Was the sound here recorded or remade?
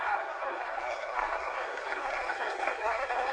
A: remade